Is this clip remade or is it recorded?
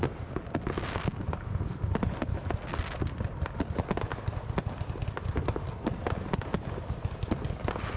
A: recorded